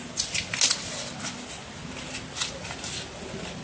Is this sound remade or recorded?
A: recorded